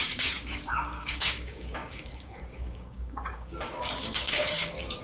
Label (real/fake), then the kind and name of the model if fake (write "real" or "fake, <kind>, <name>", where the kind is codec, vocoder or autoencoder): fake, codec, DAC